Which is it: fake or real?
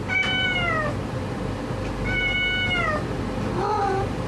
real